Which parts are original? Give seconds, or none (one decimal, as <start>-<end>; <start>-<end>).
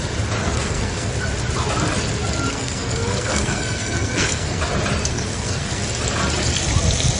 0.0-0.4; 1.1-2.5; 4.6-5.1; 5.8-7.2